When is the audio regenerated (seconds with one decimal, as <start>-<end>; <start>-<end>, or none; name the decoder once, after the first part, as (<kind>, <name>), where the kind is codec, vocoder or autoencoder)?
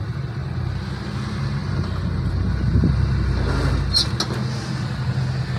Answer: none